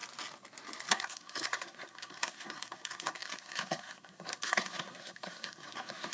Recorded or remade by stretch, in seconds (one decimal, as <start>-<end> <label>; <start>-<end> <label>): 0.0-0.9 recorded; 0.9-6.1 remade